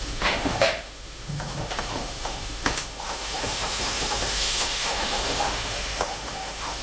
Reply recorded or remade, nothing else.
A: remade